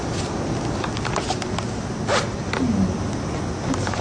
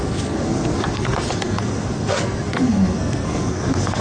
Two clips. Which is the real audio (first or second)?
first